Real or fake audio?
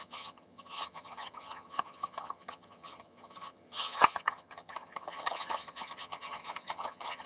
fake